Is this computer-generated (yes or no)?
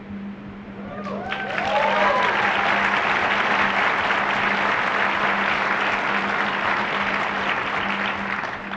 no